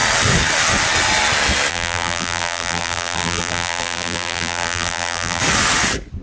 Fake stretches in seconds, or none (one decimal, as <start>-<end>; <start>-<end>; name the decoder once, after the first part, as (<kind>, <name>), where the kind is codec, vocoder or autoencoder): 1.7-5.4 (vocoder, BigVGAN v2)